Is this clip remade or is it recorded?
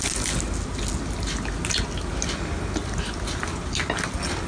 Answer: recorded